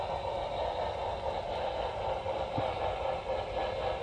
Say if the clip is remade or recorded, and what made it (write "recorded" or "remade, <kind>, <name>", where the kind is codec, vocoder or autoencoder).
recorded